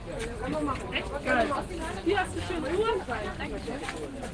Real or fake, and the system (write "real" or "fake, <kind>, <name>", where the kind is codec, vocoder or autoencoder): real